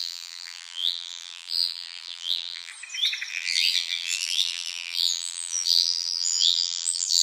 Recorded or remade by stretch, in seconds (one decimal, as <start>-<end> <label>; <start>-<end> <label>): 0.0-2.7 remade; 2.7-3.3 recorded; 3.3-7.2 remade